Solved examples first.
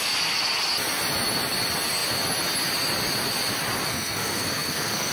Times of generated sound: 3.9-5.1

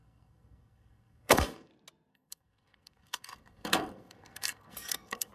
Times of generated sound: 0.0-1.7; 2.1-5.3

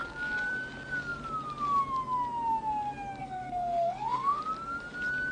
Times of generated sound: 3.2-4.4

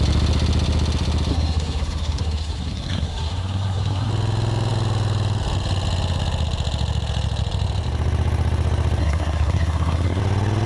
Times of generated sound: 1.3-4.1; 9.0-10.2